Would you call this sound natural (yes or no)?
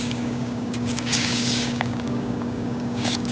no